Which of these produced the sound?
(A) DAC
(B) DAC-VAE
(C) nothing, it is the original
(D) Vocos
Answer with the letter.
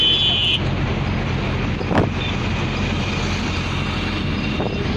C